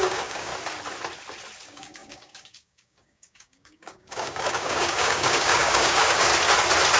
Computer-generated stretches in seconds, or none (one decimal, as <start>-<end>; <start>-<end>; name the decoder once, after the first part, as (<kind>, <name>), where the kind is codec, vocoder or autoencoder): 0.0-0.5 (codec, DAC); 1.6-6.3

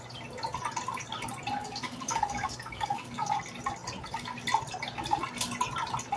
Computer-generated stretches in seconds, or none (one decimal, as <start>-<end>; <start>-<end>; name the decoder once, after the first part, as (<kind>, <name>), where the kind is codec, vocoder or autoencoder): 1.6-3.4 (codec, DAC)

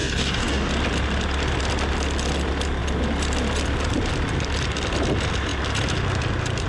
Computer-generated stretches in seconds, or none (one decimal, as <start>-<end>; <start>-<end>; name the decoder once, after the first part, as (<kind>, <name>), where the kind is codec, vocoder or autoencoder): 0.0-0.7 (codec, DAC)

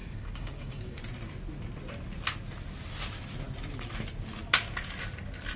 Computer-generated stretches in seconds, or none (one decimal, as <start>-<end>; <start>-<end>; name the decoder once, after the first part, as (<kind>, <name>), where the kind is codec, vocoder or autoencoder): 0.0-1.0 (codec, DAC)

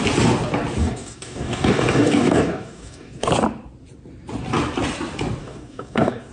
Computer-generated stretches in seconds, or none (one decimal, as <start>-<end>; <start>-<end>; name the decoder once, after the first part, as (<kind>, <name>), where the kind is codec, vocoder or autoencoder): 0.8-3.3 (codec, DAC); 5.4-6.3

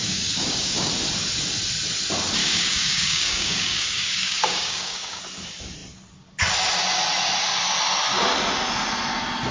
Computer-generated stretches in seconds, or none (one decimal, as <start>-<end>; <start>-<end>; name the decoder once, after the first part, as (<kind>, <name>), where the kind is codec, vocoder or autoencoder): 0.0-0.9 (codec, DAC); 2.4-5.2

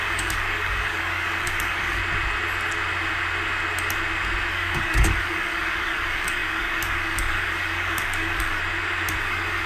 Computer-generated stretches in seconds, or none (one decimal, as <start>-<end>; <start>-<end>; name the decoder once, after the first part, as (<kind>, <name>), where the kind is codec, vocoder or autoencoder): 0.0-2.0 (codec, DAC); 4.5-8.6; 9.2-9.7

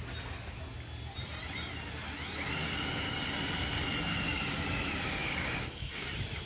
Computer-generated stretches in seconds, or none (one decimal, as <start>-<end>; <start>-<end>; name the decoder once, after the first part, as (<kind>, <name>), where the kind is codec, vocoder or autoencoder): 2.6-3.3 (codec, DAC); 4.1-4.7; 5.2-6.1